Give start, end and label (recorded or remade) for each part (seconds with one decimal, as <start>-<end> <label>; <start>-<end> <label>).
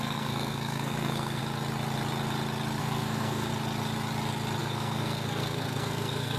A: 0.0-1.4 remade; 1.4-2.8 recorded; 2.8-3.5 remade; 3.5-4.6 recorded; 4.6-6.4 remade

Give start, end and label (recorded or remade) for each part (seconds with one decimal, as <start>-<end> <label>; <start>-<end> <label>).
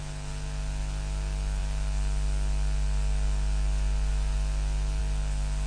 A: 0.0-5.7 recorded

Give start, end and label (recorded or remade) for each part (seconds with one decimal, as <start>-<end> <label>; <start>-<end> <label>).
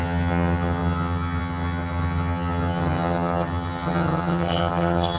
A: 0.0-5.2 remade